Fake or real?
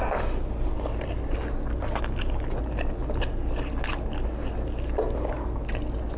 real